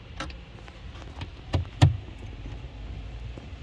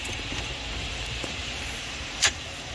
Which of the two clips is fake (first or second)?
second